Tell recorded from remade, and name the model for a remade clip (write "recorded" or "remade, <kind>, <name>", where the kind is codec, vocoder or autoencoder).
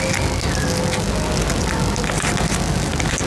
recorded